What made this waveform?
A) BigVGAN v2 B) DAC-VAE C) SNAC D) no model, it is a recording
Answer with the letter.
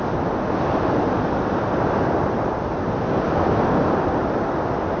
D